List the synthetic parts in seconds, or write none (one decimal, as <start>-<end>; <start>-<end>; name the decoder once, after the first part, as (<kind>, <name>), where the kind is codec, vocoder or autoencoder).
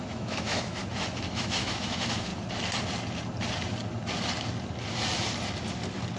0.0-0.8 (autoencoder, DAC-VAE); 1.3-2.3